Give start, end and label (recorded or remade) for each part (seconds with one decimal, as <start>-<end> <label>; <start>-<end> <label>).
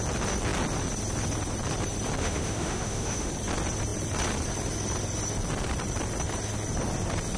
0.0-2.2 recorded; 2.2-3.3 remade; 3.3-7.4 recorded